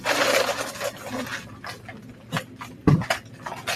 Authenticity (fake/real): real